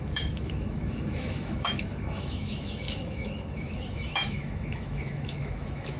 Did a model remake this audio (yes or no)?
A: yes